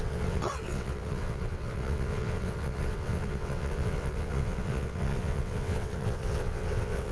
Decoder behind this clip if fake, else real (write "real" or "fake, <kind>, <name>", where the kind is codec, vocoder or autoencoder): fake, vocoder, WaveNeXt